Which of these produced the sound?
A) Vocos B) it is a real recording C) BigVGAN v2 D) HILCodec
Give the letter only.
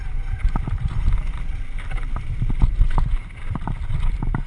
B